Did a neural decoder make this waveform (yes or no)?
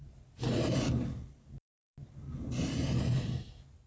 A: no